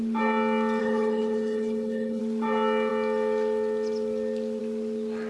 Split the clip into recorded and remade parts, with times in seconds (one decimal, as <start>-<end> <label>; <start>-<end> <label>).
0.0-0.8 recorded; 0.8-2.2 remade; 2.2-5.3 recorded